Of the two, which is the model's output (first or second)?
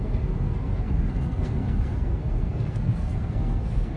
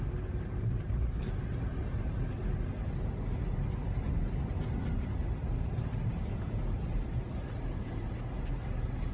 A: first